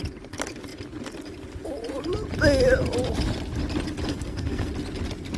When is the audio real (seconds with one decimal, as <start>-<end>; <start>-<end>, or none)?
0.0-4.1; 4.7-5.4